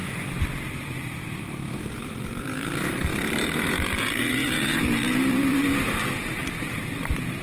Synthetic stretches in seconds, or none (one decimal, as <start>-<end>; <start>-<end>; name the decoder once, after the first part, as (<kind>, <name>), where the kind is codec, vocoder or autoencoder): 1.7-7.4 (vocoder, BigVGAN v2)